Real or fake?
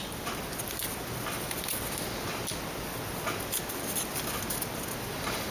real